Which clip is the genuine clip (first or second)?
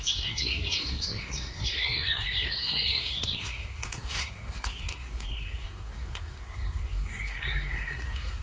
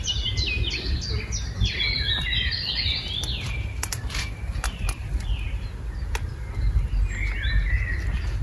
second